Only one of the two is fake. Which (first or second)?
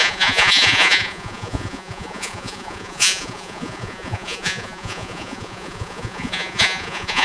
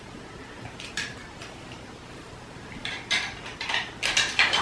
first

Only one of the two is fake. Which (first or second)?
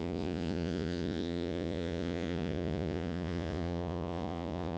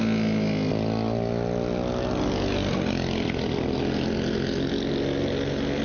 first